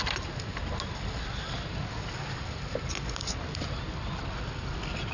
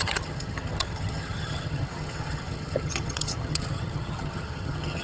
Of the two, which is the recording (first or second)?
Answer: first